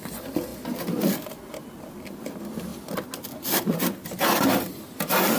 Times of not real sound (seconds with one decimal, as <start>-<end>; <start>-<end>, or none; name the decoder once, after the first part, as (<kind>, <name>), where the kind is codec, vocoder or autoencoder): none